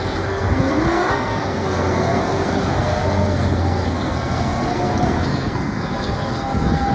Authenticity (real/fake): fake